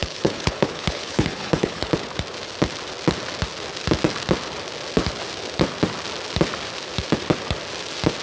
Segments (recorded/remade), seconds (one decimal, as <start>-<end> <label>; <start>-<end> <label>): 0.0-1.9 remade; 1.9-8.2 recorded